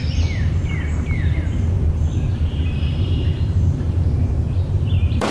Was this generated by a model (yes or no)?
yes